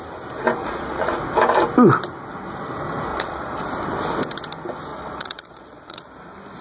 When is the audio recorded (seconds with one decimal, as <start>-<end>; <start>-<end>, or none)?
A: 0.0-0.6; 1.2-3.1; 3.6-4.9; 6.1-6.6